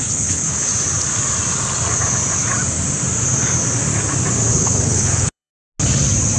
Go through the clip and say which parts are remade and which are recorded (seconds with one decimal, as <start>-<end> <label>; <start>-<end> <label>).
0.0-0.7 remade; 0.7-4.5 recorded; 4.5-5.5 remade; 5.5-6.4 recorded